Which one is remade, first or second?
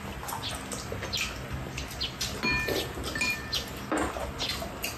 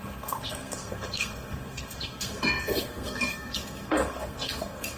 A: second